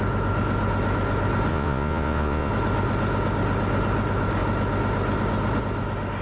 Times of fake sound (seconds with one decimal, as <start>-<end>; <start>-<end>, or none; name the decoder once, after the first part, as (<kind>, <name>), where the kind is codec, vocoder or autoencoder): 1.5-2.5 (vocoder, Vocos)